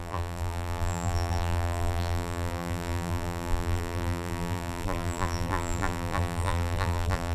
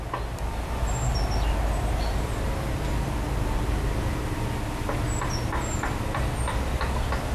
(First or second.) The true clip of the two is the second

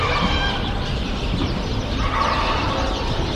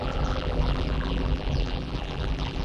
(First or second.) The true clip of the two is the first